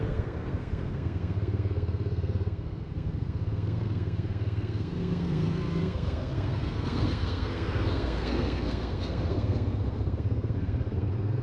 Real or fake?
fake